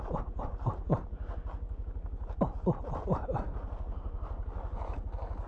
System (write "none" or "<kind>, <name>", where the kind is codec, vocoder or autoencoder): none